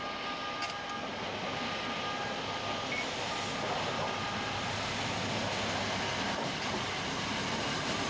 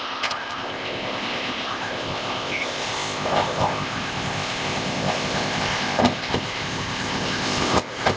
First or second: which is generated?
second